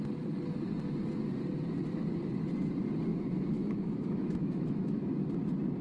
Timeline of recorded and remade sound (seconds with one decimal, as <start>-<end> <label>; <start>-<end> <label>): 0.0-3.1 recorded; 3.1-5.1 remade; 5.1-5.8 recorded